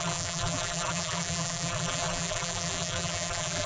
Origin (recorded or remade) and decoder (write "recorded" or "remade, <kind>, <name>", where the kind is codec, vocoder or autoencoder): remade, vocoder, BigVGAN v2